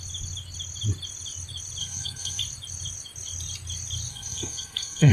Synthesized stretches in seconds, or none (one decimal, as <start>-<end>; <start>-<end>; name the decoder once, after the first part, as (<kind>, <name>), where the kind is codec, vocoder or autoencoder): 1.8-2.4 (codec, SNAC); 4.1-5.1